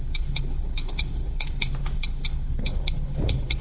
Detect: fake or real fake